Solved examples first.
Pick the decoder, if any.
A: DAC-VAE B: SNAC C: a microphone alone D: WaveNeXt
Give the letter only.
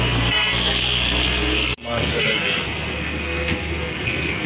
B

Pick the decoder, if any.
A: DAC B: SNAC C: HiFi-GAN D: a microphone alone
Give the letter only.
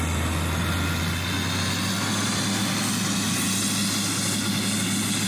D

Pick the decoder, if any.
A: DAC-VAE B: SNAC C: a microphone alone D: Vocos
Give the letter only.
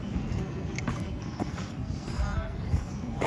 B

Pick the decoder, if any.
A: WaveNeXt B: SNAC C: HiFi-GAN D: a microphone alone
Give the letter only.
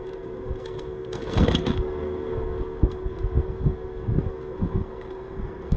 B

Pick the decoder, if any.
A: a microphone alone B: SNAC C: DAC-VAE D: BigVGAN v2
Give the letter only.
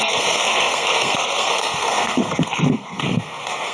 B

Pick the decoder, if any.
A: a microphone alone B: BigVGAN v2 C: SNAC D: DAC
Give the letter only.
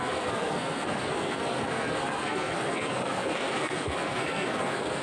C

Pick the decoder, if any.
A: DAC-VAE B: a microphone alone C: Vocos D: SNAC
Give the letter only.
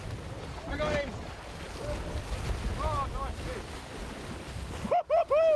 B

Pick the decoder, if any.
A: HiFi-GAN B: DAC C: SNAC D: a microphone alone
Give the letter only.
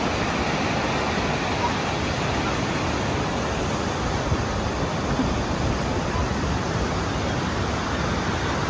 D